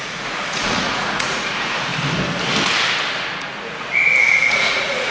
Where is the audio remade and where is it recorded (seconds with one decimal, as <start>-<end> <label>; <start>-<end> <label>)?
0.0-1.9 remade; 1.9-3.3 recorded; 3.3-5.1 remade